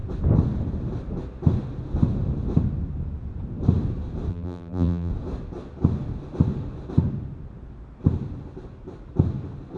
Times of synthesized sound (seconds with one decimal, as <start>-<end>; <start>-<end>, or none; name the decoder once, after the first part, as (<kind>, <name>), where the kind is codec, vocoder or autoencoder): 4.3-5.1 (vocoder, BigVGAN v2)